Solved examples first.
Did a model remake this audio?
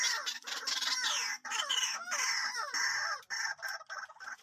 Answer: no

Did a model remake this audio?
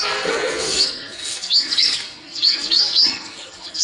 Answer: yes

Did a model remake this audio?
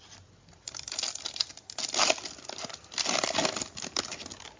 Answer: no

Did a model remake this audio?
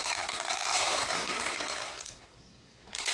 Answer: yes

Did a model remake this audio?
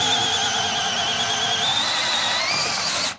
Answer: no